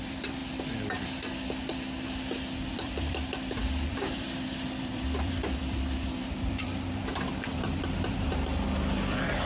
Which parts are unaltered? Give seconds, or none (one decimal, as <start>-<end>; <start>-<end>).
0.4-2.7